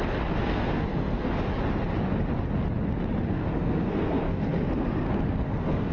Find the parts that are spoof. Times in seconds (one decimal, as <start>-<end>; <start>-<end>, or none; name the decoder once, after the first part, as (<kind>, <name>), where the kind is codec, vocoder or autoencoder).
0.4-1.3 (codec, SNAC); 3.3-5.9